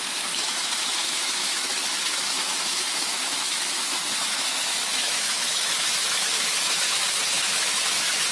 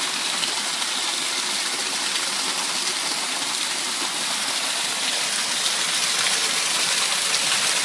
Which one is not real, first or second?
first